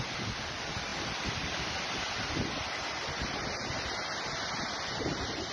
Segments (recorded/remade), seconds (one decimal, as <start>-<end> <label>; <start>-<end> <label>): 0.0-5.5 recorded